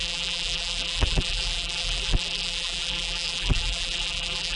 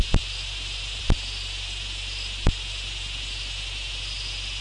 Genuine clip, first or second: second